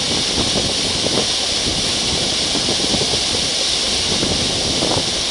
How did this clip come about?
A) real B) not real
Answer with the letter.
A